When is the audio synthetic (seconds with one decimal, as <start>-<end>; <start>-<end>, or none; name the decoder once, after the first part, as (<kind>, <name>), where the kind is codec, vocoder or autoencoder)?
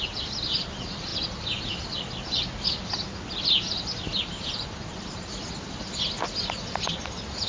none